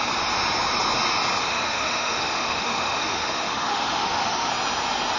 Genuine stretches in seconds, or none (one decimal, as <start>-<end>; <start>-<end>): 0.0-1.4; 4.5-5.2